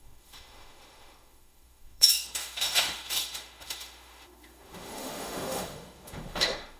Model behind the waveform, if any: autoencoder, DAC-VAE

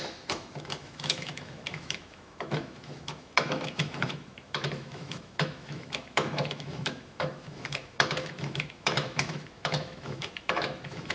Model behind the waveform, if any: autoencoder, DAC-VAE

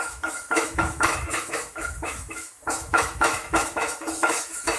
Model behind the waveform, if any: autoencoder, DAC-VAE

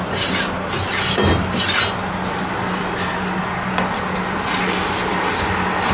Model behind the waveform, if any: none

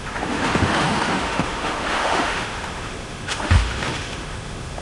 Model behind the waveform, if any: autoencoder, DAC-VAE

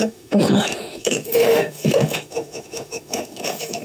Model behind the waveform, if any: autoencoder, DAC-VAE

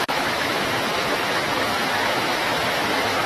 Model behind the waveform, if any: autoencoder, DAC-VAE